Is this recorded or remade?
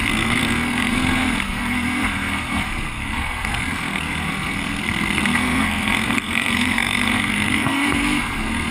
remade